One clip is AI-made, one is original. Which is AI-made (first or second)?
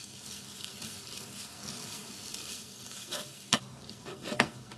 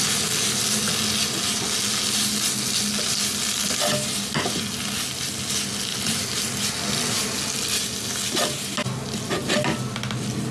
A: first